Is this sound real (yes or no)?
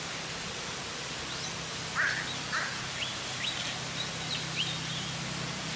yes